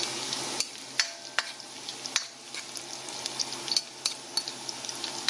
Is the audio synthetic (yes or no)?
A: no